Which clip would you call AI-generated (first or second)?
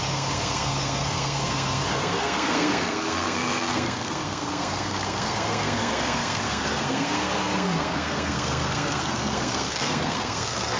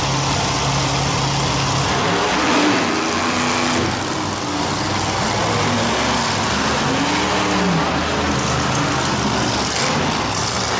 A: first